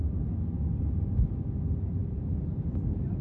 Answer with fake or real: real